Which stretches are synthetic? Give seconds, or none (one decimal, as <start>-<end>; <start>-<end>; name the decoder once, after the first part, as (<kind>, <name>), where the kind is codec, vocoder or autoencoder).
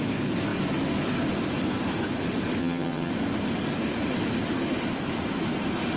2.6-3.1 (vocoder, HiFi-GAN)